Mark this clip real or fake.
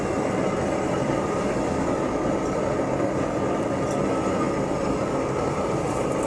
real